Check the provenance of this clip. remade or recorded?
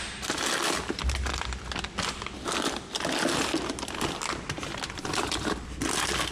remade